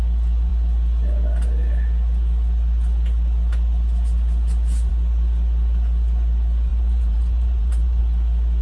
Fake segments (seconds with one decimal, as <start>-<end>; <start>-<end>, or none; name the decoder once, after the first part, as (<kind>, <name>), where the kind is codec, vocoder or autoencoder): 6.7-8.0 (vocoder, BigVGAN v2)